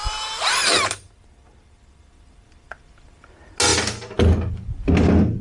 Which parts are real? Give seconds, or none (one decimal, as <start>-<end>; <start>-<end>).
1.1-5.4